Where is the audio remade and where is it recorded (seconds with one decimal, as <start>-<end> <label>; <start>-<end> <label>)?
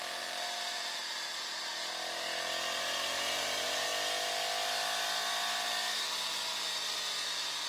0.0-3.9 remade; 3.9-7.7 recorded